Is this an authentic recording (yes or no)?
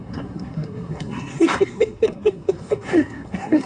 no